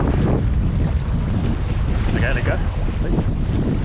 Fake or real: real